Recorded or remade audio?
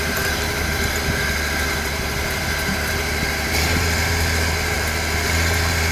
remade